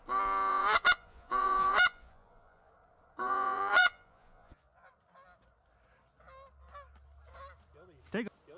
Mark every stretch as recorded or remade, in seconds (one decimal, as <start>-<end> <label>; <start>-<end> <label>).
0.0-0.5 recorded; 0.5-2.7 remade; 2.7-3.2 recorded; 3.2-4.9 remade; 4.9-8.6 recorded